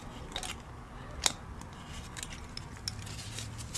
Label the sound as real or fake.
real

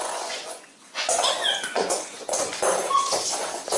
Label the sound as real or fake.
fake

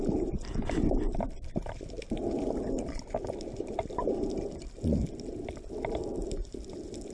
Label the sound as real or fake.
fake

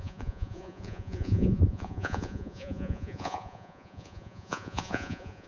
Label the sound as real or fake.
fake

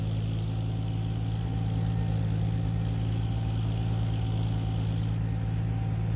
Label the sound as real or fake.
real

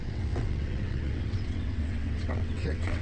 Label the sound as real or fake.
fake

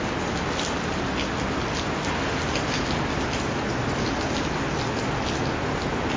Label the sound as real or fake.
real